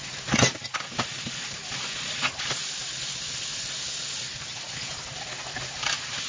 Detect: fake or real real